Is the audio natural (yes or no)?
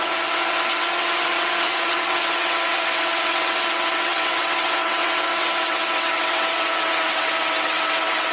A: no